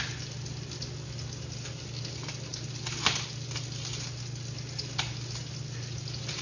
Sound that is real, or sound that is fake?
real